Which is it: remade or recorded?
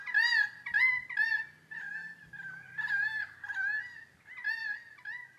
recorded